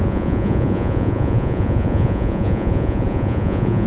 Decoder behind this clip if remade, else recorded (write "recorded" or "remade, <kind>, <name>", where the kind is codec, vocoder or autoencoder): remade, vocoder, Vocos